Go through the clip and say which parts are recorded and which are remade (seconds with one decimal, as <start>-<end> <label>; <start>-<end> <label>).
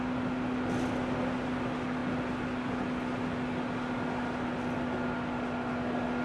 0.0-6.2 recorded